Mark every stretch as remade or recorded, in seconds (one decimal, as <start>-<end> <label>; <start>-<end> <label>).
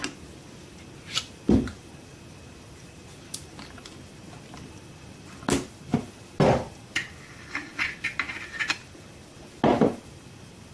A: 0.0-10.7 recorded